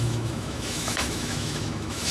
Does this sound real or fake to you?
fake